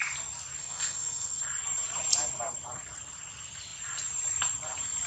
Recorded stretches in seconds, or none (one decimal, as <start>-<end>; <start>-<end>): 0.0-0.6; 1.4-5.1